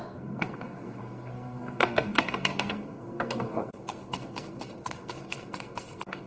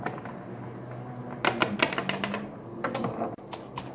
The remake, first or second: first